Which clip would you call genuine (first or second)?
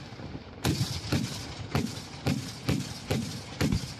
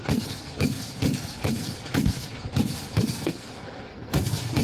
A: first